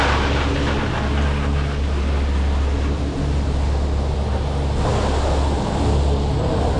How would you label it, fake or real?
real